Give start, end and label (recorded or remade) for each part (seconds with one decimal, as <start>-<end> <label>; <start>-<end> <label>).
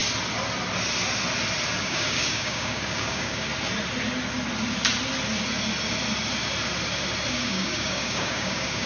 0.0-1.8 recorded; 1.8-3.5 remade; 3.5-7.3 recorded; 7.3-8.9 remade